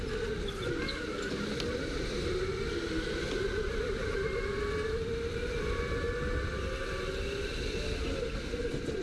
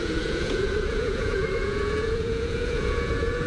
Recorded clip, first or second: first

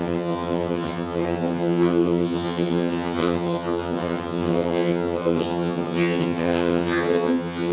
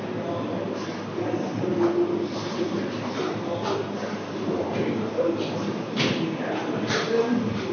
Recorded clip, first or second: second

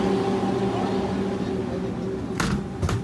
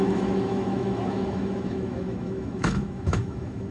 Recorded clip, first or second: first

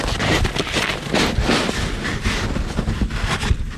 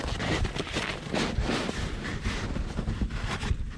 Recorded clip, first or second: first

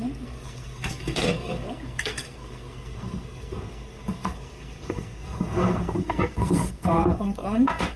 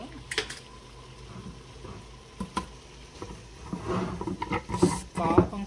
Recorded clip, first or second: second